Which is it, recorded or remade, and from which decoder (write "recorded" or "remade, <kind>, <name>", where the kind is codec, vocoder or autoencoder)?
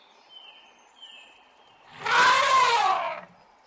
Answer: recorded